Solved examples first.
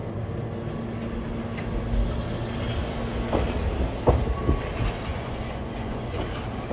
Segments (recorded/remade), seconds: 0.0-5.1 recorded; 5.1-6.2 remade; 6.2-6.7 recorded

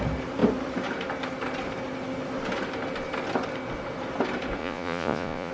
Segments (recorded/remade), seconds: 0.0-4.6 recorded; 4.6-5.5 remade